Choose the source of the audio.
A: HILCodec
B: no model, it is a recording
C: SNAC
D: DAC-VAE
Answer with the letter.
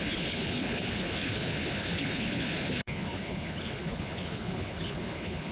A